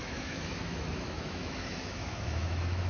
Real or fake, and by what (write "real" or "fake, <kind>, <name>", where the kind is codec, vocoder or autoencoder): fake, autoencoder, DAC-VAE